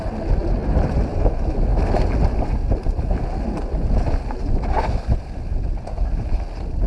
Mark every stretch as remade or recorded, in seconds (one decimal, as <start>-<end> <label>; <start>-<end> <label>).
0.0-6.9 recorded